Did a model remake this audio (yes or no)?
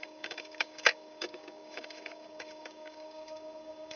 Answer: yes